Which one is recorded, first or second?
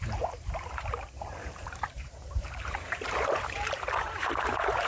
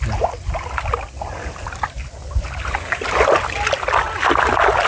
second